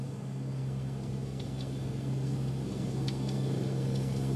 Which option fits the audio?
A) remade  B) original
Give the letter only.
A